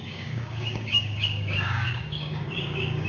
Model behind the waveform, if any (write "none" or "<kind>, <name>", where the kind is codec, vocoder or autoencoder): codec, DAC